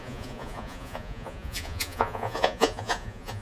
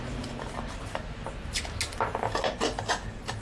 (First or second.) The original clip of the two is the second